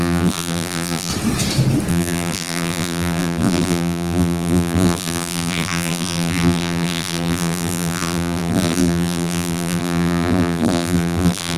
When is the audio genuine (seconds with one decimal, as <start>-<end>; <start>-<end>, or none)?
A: 1.1-1.9